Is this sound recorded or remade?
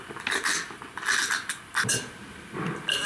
recorded